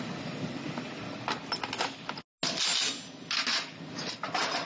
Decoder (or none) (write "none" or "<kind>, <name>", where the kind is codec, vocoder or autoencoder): none